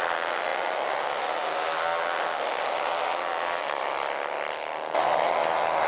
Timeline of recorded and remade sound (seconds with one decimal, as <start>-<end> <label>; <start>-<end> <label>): 0.0-5.9 recorded